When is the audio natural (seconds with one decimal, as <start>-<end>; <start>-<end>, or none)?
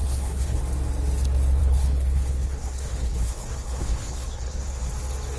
0.6-1.6; 4.8-5.4